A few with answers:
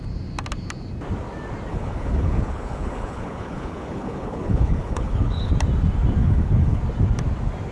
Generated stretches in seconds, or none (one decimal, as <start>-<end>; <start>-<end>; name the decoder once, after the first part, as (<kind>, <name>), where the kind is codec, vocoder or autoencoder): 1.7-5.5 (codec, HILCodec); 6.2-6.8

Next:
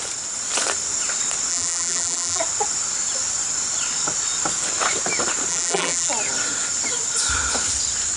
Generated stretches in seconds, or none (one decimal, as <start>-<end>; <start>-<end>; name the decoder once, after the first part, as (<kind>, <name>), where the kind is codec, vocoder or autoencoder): 1.5-2.4 (vocoder, BigVGAN v2); 5.5-6.1

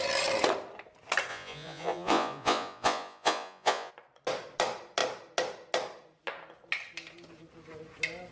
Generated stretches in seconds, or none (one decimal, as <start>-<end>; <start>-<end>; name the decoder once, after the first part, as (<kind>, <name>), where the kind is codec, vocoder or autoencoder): 1.3-3.9 (vocoder, Vocos)

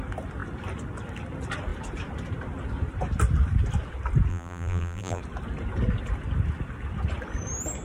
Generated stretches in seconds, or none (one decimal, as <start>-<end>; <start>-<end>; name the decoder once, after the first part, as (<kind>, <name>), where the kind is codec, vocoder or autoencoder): 4.3-5.2 (vocoder, BigVGAN v2)

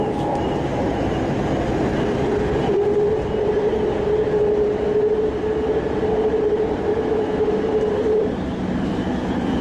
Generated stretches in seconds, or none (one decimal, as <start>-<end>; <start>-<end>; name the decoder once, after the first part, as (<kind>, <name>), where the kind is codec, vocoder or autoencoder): 6.9-7.5 (autoencoder, DAC-VAE)